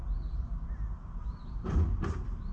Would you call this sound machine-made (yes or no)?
yes